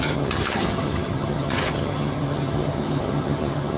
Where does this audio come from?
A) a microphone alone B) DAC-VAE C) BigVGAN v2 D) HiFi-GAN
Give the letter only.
D